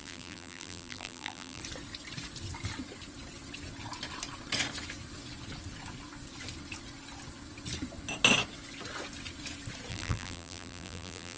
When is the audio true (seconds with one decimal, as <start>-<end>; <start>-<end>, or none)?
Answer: 1.6-9.9